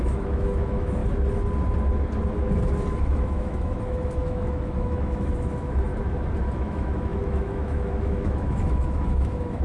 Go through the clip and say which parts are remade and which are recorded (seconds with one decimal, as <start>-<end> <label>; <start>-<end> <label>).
0.0-1.0 remade; 1.0-2.9 recorded; 2.9-5.9 remade; 5.9-6.4 recorded; 6.4-9.6 remade